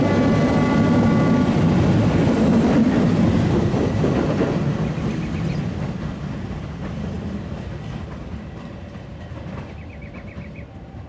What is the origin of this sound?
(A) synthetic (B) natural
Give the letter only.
B